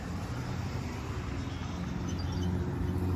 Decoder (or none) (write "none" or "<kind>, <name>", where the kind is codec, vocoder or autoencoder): none